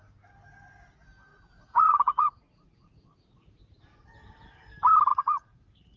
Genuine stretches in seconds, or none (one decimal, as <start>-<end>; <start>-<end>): 0.0-1.3; 3.6-5.1